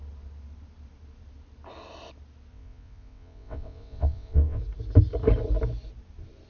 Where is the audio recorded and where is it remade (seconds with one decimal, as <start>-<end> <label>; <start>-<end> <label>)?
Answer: 0.0-2.5 recorded; 2.5-4.6 remade; 4.6-6.5 recorded